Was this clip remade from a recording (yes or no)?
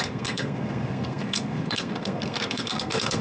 yes